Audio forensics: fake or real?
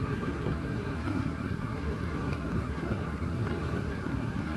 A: fake